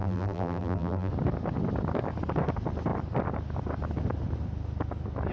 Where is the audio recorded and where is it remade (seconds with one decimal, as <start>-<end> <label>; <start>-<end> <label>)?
0.0-1.1 remade; 1.1-5.3 recorded